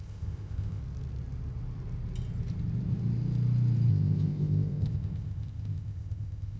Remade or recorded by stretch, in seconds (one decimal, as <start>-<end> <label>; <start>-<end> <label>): 0.0-0.8 remade; 0.8-3.9 recorded; 3.9-6.6 remade